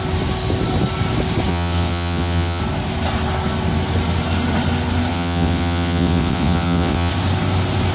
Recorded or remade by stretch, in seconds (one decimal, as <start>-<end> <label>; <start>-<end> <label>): 0.0-1.5 recorded; 1.5-2.6 remade; 2.6-5.1 recorded; 5.1-7.1 remade; 7.1-7.9 recorded